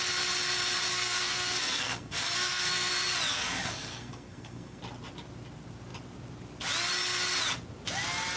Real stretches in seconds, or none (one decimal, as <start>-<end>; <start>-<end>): 0.0-0.9; 2.9-3.3; 4.8-8.4